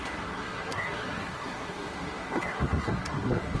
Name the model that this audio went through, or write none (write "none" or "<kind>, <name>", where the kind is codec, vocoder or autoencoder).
codec, SNAC